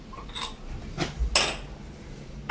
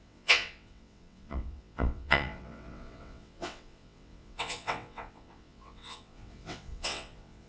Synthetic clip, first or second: second